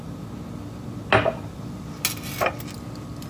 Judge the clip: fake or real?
real